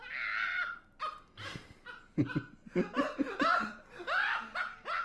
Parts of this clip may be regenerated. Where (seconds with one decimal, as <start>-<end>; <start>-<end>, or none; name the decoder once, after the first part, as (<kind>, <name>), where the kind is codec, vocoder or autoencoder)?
none